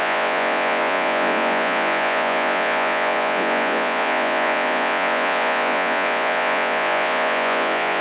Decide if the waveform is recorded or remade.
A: remade